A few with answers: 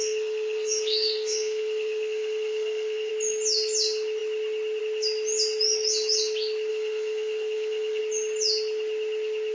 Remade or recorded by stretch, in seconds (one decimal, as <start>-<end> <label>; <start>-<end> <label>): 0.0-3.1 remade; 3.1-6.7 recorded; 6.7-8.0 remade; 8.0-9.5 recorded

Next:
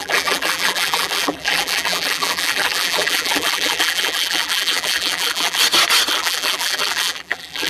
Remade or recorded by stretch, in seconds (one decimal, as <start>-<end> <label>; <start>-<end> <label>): 0.0-5.6 remade; 5.6-6.1 recorded; 6.1-7.7 remade

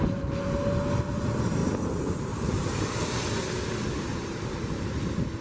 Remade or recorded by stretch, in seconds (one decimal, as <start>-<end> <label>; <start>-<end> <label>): 0.0-1.6 recorded; 1.6-3.0 remade; 3.0-4.1 recorded; 4.1-5.0 remade; 5.0-5.4 recorded

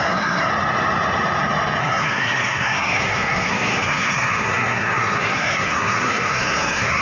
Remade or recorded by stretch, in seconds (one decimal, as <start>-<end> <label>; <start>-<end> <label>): 0.0-0.5 remade; 0.5-1.8 recorded; 1.8-7.0 remade

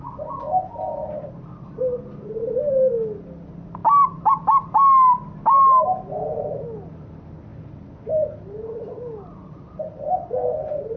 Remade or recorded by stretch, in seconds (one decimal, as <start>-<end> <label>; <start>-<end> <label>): 0.0-11.0 recorded

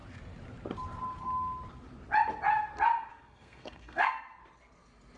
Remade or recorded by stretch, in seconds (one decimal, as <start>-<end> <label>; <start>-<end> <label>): 0.0-3.1 recorded; 3.1-4.4 remade; 4.4-5.2 recorded

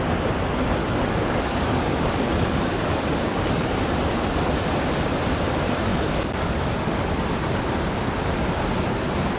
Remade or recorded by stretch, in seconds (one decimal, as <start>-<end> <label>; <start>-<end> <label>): 0.0-0.8 recorded; 0.8-3.8 remade; 3.8-5.9 recorded; 5.9-7.1 remade; 7.1-9.4 recorded

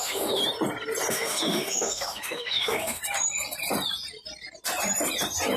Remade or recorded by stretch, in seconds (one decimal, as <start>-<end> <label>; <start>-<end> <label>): 0.0-0.4 remade; 0.4-1.1 recorded; 1.1-3.0 remade; 3.0-5.6 recorded